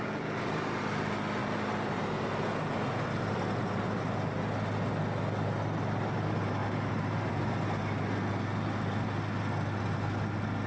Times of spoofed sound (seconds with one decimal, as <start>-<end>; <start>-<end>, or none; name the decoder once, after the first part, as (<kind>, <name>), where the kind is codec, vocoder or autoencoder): 1.4-2.1 (vocoder, BigVGAN v2); 6.6-7.3